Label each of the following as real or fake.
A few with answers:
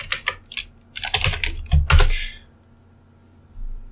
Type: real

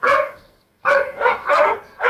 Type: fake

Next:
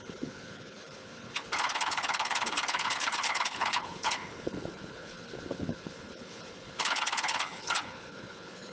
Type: fake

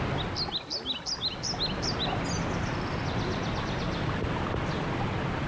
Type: real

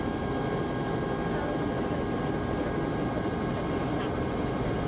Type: real